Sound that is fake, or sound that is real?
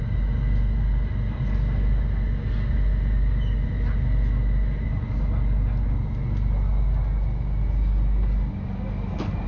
real